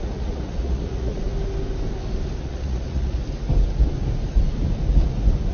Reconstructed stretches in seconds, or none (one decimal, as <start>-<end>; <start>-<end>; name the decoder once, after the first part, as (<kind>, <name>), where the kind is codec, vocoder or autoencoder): 0.0-1.3 (vocoder, Vocos); 2.4-3.2